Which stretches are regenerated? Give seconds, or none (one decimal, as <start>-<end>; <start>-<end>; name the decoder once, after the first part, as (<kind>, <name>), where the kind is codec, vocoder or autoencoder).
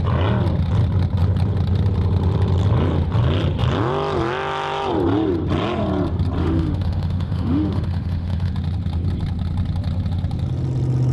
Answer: 6.4-8.5 (autoencoder, DAC-VAE)